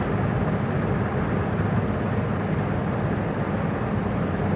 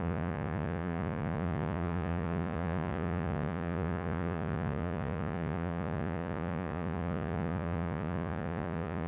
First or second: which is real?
first